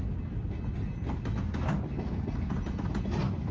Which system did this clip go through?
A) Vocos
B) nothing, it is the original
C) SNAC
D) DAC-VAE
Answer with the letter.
B